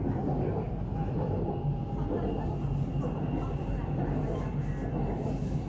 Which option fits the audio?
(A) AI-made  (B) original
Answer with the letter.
B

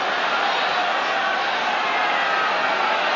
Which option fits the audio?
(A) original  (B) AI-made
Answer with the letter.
A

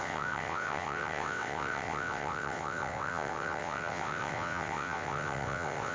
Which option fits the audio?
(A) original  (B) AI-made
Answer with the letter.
B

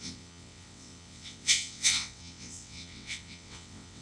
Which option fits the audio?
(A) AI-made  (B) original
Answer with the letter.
A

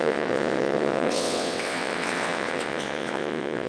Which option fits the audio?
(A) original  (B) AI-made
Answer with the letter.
B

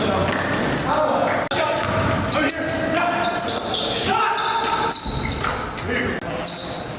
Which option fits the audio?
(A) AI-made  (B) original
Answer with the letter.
B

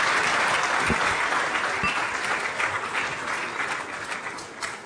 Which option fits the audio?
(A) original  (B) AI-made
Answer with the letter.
A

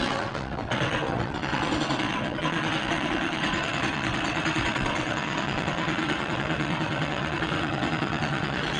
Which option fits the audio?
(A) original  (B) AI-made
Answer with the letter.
B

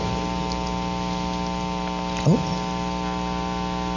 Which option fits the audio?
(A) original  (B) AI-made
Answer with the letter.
A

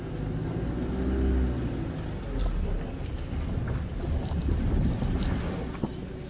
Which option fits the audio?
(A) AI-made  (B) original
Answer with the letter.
B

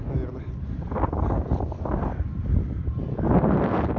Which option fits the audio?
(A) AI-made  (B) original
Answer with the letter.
B